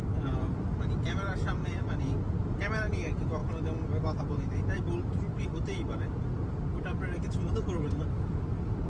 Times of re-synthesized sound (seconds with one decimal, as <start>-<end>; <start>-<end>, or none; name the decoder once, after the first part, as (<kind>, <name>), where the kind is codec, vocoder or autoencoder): none